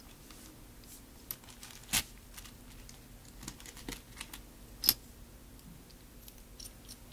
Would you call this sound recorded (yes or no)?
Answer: yes